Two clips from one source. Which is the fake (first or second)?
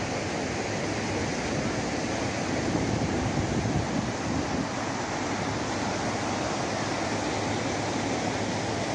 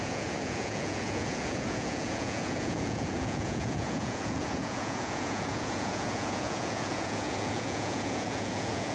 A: second